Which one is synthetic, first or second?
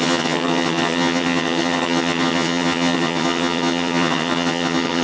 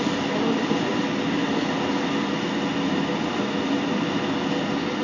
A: first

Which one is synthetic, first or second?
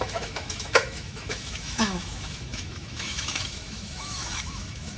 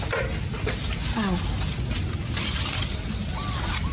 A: first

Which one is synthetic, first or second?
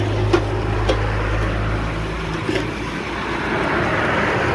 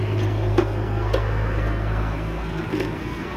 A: second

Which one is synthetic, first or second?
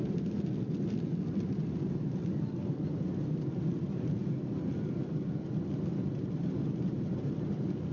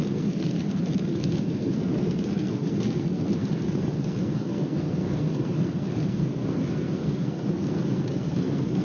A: second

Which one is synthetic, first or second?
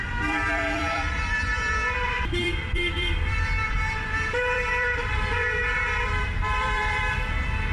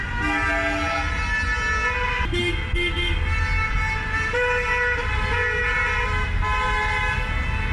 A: first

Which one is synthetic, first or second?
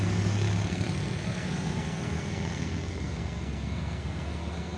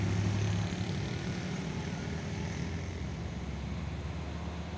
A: first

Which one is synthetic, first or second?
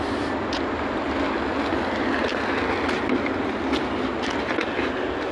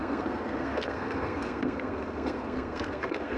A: second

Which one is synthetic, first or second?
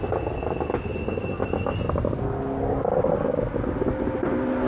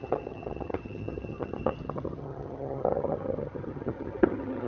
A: second